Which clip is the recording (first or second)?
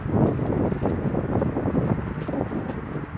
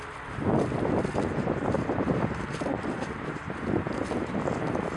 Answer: first